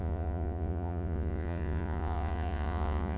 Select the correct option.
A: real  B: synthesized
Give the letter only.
B